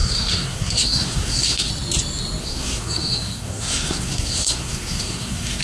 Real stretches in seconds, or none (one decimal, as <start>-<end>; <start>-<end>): 1.7-2.4

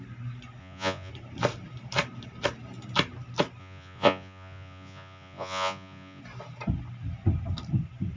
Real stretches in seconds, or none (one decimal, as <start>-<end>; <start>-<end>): 0.0-0.6; 1.1-3.6; 6.2-8.2